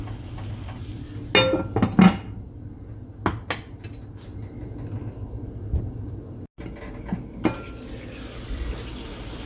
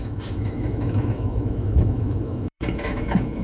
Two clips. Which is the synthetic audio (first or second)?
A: second